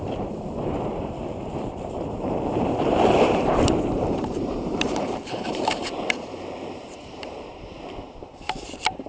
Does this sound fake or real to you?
fake